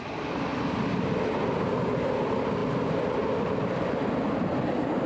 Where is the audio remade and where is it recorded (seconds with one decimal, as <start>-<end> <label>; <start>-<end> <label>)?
0.0-5.1 recorded